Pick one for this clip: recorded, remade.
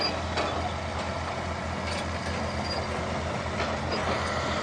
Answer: recorded